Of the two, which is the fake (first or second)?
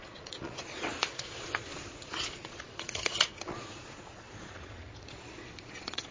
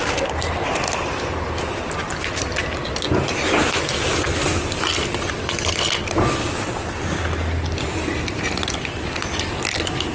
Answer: first